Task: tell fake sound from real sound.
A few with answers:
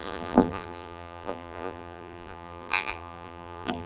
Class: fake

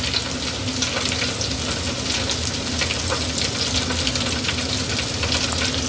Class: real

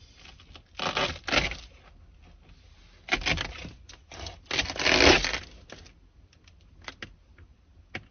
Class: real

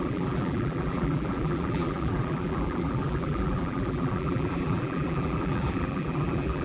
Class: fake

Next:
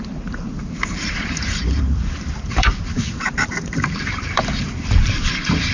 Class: fake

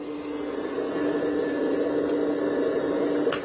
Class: real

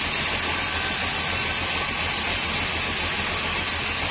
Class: real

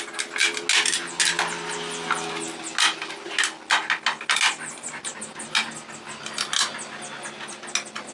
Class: real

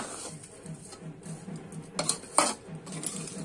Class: real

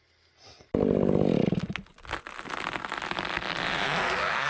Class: real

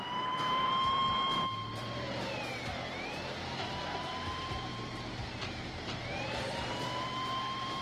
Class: fake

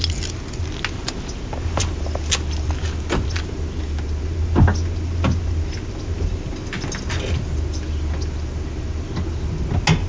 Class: real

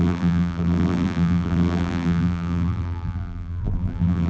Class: fake